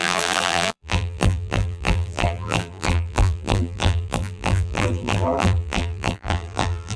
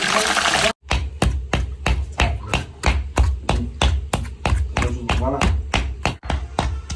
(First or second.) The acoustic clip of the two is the second